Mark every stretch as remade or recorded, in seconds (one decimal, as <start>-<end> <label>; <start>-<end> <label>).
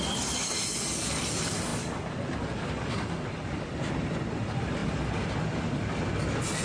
0.0-6.6 recorded